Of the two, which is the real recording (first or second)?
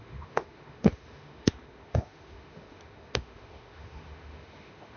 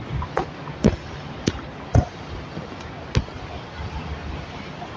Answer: second